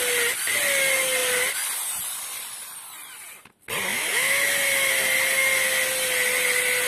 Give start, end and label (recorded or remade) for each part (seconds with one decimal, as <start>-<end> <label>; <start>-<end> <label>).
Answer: 0.0-3.9 recorded; 3.9-4.4 remade; 4.4-6.9 recorded